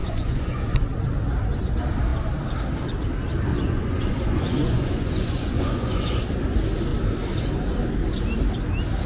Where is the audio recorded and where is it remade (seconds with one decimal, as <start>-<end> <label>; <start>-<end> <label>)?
0.0-0.6 remade; 0.6-3.5 recorded; 3.5-6.2 remade; 6.2-9.1 recorded